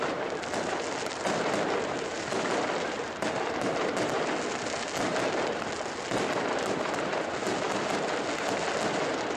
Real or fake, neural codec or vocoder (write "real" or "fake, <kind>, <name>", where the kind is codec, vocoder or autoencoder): real